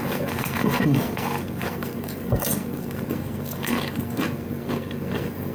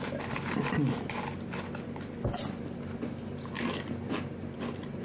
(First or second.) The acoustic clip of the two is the second